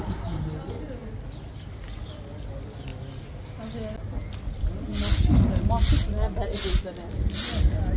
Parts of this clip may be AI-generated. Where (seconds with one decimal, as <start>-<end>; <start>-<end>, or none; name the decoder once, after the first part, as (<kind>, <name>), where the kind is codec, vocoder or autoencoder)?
none

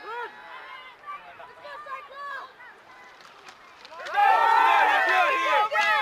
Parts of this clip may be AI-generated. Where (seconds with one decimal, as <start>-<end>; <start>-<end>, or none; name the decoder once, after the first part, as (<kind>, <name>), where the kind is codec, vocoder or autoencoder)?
1.1-3.8 (vocoder, BigVGAN v2); 4.2-5.1

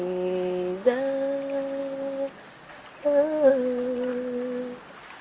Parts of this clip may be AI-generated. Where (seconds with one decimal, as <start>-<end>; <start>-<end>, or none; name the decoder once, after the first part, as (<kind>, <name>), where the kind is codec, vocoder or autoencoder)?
none

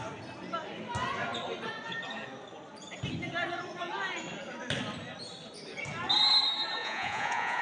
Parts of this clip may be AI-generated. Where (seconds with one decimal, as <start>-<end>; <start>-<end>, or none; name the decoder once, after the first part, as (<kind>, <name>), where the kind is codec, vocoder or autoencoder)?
6.8-7.6 (vocoder, Vocos)

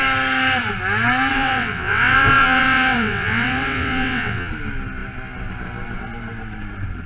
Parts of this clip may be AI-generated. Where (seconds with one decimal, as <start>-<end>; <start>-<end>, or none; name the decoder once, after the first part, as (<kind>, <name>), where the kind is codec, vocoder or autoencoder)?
1.3-4.5 (vocoder, WaveNeXt)

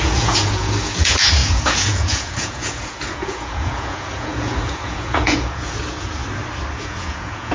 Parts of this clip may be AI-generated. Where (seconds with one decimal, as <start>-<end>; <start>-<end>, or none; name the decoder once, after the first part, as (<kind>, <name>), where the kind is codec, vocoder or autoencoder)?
0.0-6.2 (vocoder, Vocos); 6.7-7.5